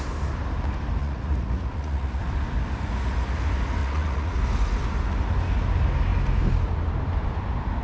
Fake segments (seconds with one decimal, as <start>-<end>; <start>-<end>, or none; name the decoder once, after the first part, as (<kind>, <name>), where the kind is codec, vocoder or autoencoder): 1.0-2.2 (vocoder, Vocos); 3.8-4.4